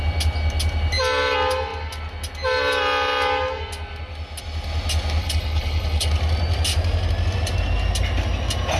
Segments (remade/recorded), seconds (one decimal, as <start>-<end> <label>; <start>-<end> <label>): 0.0-5.2 recorded; 5.2-6.1 remade; 6.1-8.8 recorded